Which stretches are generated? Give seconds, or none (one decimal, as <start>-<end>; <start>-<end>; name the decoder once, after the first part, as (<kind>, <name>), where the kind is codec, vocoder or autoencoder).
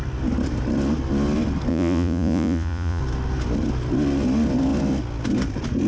1.7-3.0 (vocoder, Vocos)